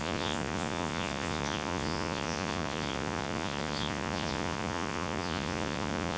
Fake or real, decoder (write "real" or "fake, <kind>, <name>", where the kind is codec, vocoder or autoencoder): fake, vocoder, Vocos